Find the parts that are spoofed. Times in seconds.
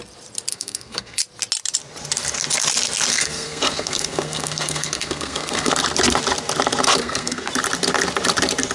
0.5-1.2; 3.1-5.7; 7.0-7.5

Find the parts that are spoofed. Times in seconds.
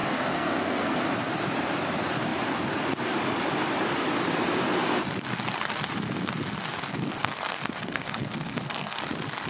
0.0-1.0; 6.9-9.0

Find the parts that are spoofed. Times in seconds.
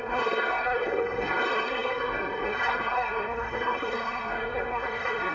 0.0-5.3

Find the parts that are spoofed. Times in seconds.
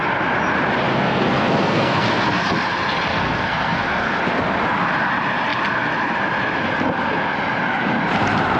0.9-2.2; 3.1-4.2